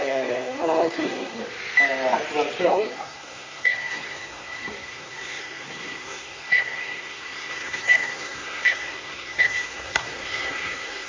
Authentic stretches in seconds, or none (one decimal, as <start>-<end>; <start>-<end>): 1.4-2.6